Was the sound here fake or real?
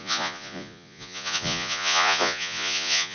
fake